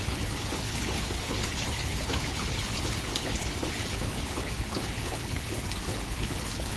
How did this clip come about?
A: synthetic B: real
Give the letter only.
A